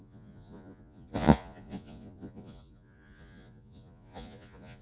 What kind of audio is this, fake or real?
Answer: fake